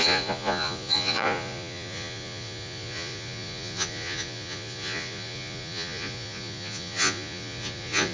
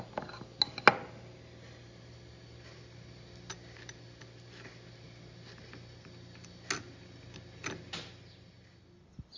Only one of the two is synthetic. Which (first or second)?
first